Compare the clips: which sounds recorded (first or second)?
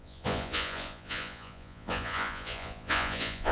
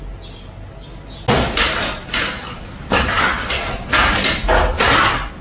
second